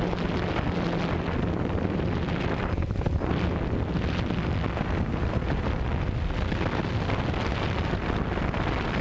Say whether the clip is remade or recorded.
recorded